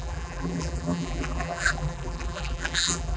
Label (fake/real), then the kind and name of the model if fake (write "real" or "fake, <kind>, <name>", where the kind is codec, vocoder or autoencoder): fake, vocoder, BigVGAN v2